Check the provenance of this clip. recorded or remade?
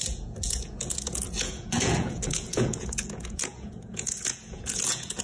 remade